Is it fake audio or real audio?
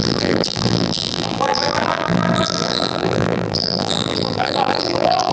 fake